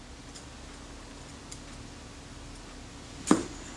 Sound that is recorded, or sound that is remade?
recorded